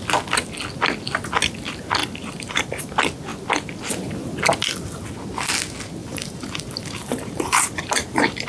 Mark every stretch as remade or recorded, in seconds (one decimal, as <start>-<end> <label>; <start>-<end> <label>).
0.0-2.0 recorded; 2.0-2.8 remade; 2.8-6.0 recorded; 6.0-8.5 remade

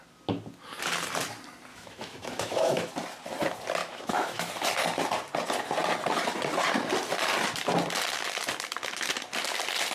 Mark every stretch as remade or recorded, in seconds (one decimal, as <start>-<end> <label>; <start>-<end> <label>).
0.0-1.7 recorded; 1.7-2.9 remade; 2.9-3.8 recorded; 3.8-4.5 remade; 4.5-9.9 recorded

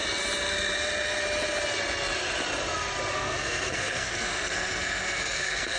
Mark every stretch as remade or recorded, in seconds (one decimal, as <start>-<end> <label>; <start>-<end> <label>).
0.0-3.1 recorded; 3.1-5.8 remade

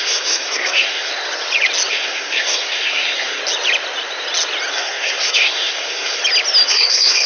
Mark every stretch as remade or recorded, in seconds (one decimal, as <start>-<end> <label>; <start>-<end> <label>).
0.0-1.1 remade; 1.1-1.9 recorded; 1.9-3.4 remade; 3.4-4.7 recorded; 4.7-6.2 remade; 6.2-6.7 recorded; 6.7-7.3 remade

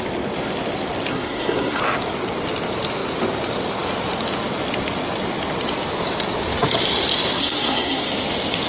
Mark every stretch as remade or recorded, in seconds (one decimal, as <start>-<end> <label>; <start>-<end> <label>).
0.0-1.1 recorded; 1.1-1.8 remade; 1.8-7.4 recorded; 7.4-8.1 remade; 8.1-8.7 recorded

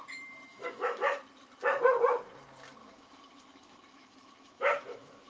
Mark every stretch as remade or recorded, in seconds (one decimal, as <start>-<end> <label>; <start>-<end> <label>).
0.0-0.5 recorded; 0.5-1.2 remade; 1.2-2.8 recorded; 2.8-5.3 remade

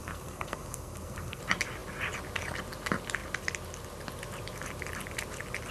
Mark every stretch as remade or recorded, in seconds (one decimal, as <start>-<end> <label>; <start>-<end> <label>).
0.0-1.4 remade; 1.4-5.7 recorded